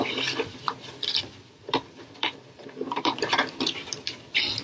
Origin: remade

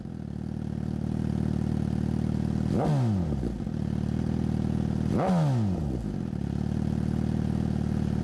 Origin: recorded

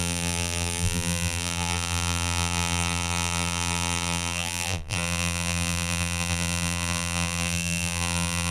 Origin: remade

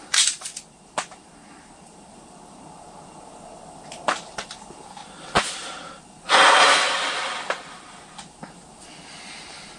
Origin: remade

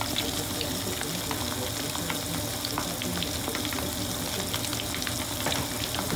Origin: recorded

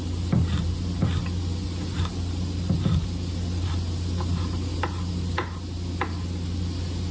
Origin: recorded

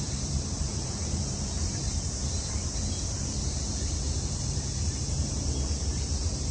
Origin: remade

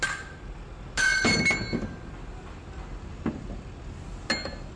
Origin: recorded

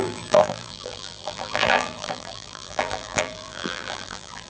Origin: remade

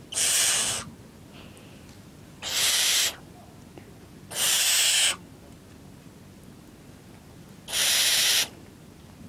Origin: recorded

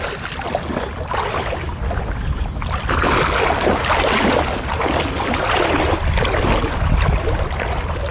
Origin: recorded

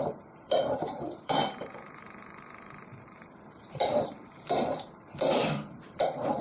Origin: remade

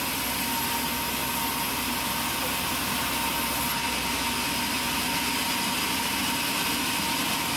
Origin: recorded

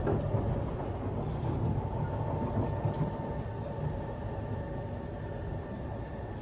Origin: recorded